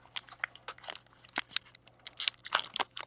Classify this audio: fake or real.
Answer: real